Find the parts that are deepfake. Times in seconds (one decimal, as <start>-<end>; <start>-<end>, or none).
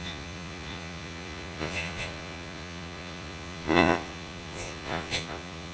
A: 0.0-5.7